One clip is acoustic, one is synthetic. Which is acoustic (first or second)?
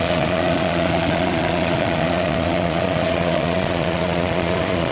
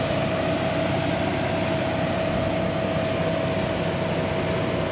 second